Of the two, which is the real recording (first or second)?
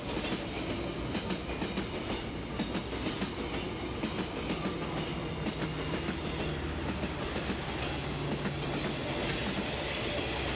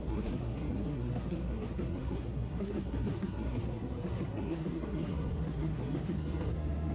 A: first